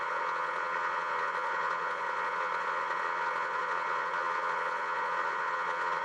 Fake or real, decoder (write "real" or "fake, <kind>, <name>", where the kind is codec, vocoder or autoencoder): fake, vocoder, Vocos